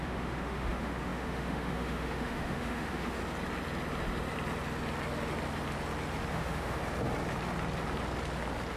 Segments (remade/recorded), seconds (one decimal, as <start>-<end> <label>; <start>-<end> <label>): 0.0-3.2 remade; 3.2-6.3 recorded; 6.3-6.8 remade; 6.8-8.8 recorded